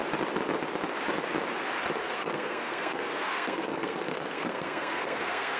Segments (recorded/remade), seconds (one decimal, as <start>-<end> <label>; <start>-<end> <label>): 0.0-2.0 recorded; 2.0-5.6 remade